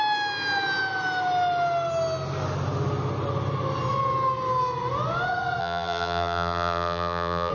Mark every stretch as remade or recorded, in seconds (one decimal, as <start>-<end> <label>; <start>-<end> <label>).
0.0-5.6 recorded; 5.6-7.5 remade